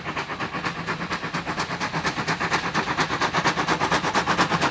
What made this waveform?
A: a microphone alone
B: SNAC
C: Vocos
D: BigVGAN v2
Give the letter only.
A